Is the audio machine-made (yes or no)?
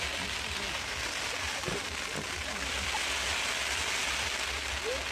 no